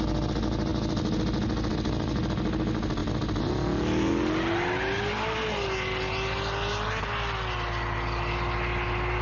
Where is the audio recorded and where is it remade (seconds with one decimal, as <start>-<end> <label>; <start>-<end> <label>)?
0.0-9.2 recorded